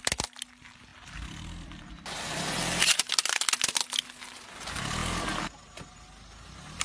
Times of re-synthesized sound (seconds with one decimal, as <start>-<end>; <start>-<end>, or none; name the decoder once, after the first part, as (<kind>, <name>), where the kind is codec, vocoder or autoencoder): 0.9-2.5 (vocoder, BigVGAN v2)